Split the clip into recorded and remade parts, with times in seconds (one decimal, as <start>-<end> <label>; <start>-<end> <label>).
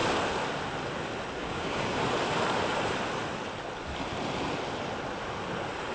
0.0-1.4 recorded; 1.4-2.0 remade; 2.0-5.9 recorded